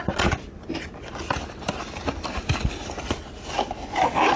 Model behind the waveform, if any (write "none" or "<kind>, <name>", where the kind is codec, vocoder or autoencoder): none